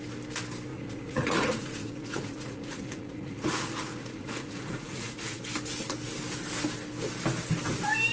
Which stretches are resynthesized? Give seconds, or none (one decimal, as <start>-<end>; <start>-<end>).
0.7-5.4